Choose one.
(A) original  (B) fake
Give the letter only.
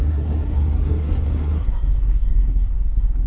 B